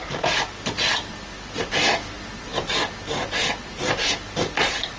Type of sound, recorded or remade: recorded